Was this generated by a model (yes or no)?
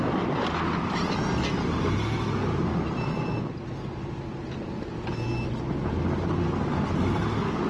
no